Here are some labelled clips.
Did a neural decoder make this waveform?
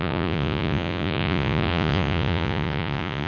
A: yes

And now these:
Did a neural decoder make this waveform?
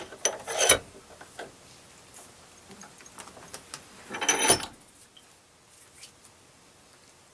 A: no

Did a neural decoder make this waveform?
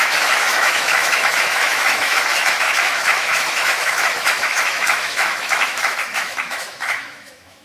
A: yes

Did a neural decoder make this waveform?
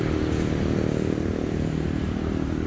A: no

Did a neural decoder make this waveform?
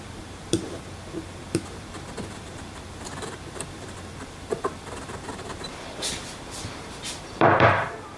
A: yes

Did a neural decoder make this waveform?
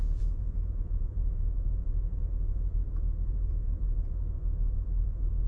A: yes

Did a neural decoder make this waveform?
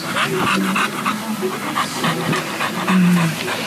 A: no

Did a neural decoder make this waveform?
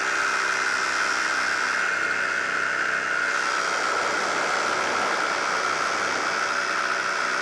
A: no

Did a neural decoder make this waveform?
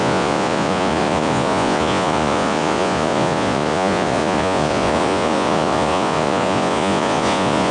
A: yes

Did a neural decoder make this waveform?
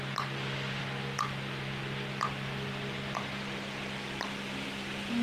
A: no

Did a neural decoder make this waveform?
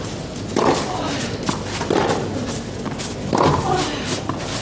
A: no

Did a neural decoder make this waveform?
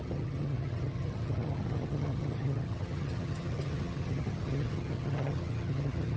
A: yes